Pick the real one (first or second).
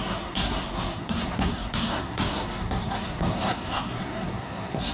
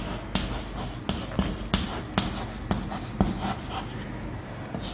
second